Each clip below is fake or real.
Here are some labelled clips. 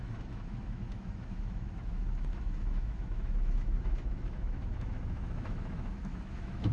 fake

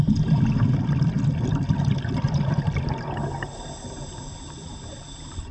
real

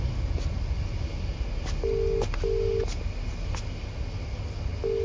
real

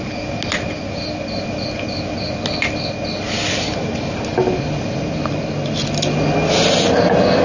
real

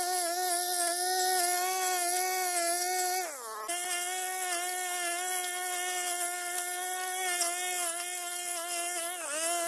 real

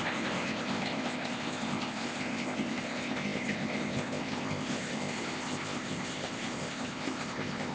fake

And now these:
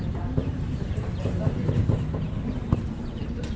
fake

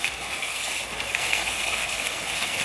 fake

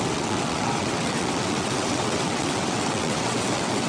fake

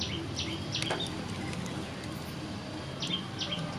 real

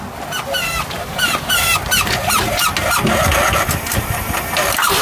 real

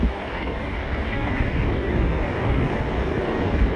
fake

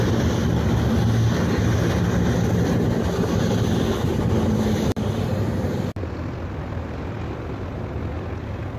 real